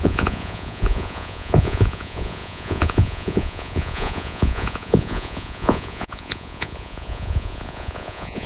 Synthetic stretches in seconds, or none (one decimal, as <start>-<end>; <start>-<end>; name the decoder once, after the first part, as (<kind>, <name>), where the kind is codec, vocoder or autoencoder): 0.0-8.5 (vocoder, Vocos)